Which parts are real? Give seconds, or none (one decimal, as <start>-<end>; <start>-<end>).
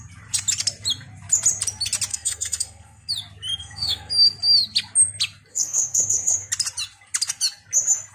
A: 0.0-2.1; 3.1-3.6; 4.1-5.5; 6.5-8.1